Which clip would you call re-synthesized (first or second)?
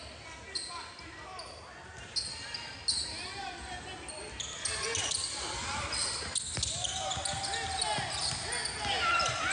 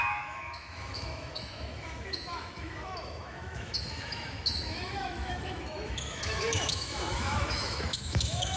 second